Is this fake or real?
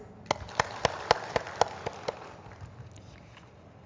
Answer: real